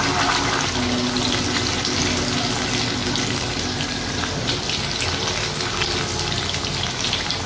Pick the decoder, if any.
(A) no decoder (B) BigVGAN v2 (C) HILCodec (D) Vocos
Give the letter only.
A